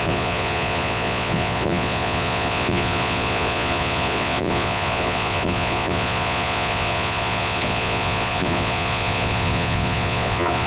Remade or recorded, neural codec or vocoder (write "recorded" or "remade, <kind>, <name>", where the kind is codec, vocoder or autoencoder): remade, vocoder, Vocos